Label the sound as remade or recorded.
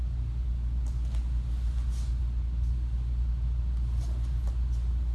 recorded